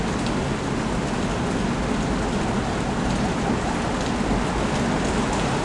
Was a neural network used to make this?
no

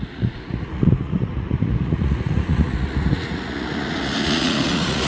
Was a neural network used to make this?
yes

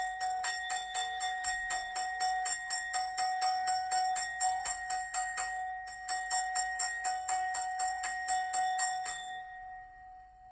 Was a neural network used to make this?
yes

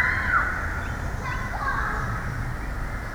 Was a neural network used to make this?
no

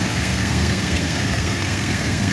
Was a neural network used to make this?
yes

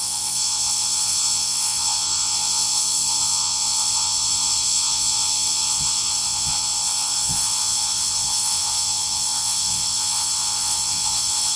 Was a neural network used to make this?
yes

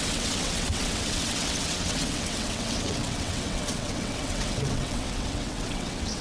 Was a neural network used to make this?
yes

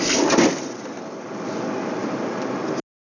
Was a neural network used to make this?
no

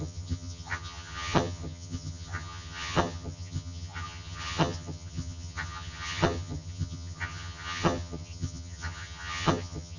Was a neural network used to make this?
yes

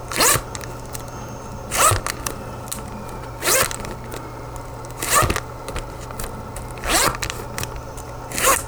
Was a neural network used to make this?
no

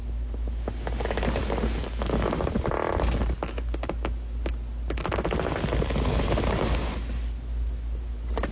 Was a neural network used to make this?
no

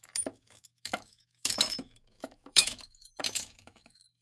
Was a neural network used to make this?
yes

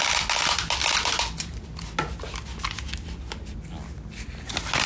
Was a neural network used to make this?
no